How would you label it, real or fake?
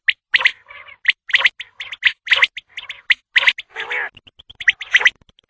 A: real